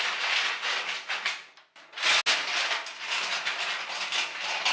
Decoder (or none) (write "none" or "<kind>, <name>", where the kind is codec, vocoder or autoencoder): none